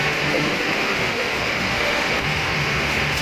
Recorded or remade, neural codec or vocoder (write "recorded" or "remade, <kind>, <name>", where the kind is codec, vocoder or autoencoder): remade, autoencoder, DAC-VAE